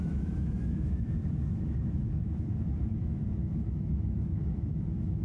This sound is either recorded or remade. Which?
remade